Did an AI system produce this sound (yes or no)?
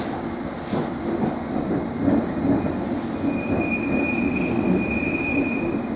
no